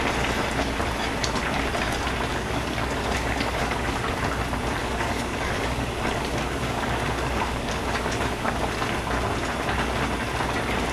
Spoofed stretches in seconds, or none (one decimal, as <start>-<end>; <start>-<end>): 2.3-4.2; 4.8-8.6